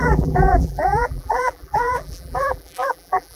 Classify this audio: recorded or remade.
remade